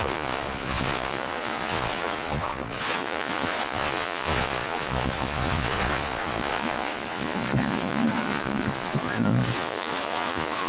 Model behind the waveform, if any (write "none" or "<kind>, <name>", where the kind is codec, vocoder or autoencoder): vocoder, Vocos